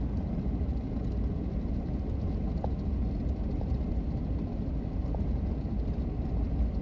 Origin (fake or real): real